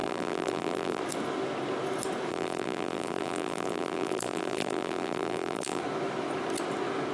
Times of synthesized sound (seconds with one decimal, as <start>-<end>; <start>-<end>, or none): 0.0-1.0; 2.3-5.8